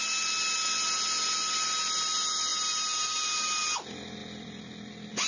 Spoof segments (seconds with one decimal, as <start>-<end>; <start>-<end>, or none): none